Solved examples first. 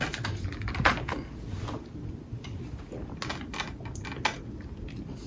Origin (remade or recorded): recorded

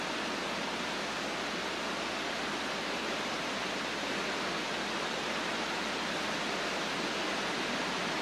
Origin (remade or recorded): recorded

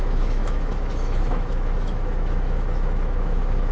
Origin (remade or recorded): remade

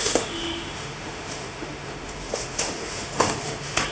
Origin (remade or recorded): remade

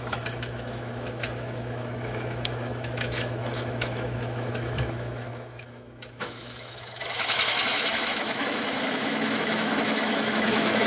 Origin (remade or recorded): remade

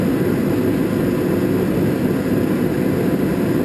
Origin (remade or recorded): recorded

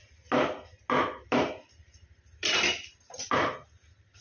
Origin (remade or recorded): recorded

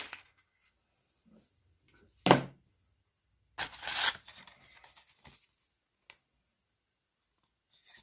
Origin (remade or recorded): recorded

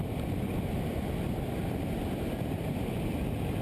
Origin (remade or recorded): recorded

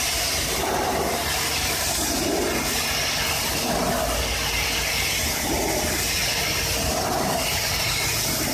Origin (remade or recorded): recorded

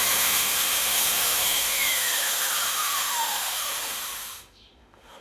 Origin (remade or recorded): remade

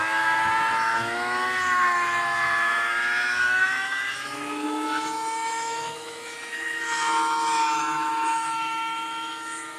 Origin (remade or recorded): remade